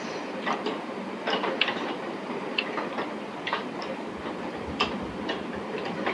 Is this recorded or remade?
recorded